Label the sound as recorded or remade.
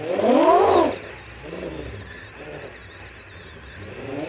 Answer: recorded